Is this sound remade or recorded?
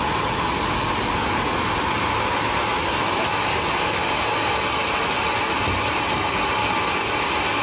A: recorded